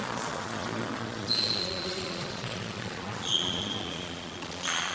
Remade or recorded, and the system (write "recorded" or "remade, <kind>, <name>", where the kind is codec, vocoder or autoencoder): remade, vocoder, Vocos